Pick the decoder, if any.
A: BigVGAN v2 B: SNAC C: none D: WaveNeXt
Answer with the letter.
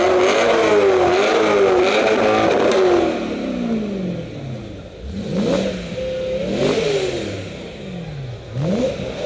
C